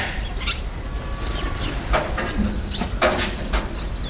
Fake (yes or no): no